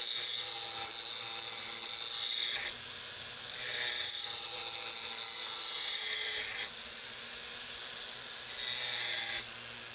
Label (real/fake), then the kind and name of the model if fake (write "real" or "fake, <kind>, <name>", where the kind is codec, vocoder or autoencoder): real